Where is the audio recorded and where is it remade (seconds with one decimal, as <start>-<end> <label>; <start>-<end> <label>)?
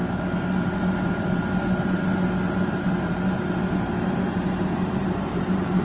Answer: 0.0-5.8 recorded